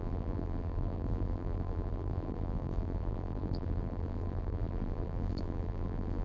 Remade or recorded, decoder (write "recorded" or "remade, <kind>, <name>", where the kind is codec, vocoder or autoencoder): remade, vocoder, BigVGAN v2